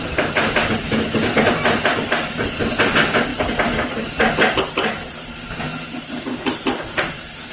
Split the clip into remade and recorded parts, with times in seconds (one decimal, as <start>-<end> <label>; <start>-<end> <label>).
0.0-3.3 recorded; 3.3-4.3 remade; 4.3-7.5 recorded